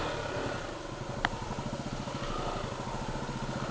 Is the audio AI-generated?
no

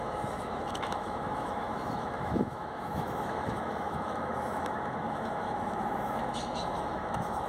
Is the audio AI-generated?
yes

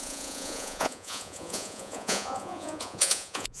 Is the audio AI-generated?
yes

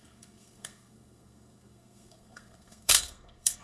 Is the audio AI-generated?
yes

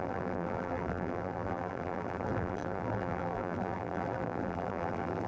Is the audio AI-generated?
yes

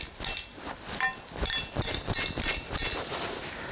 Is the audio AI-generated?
no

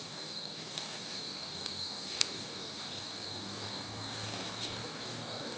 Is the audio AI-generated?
yes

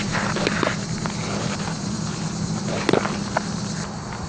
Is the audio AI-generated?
no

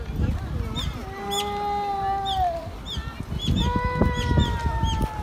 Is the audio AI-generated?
no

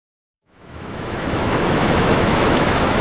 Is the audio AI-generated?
yes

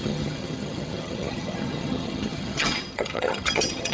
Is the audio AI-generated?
yes